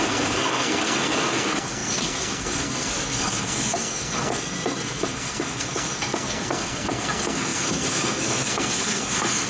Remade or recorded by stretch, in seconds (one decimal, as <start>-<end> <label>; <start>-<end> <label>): 0.0-9.5 remade